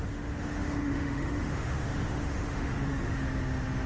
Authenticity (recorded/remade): remade